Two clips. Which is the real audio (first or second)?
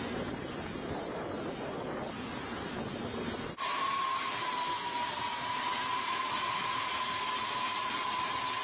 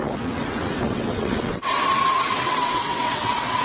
first